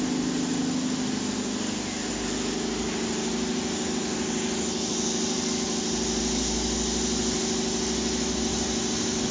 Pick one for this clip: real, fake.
real